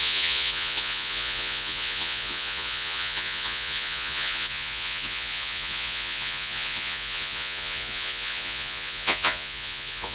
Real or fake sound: fake